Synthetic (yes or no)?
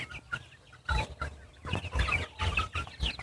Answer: no